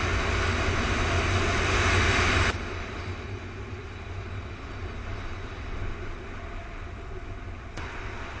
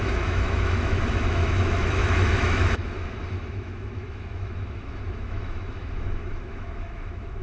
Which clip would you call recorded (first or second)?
first